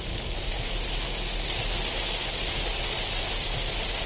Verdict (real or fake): real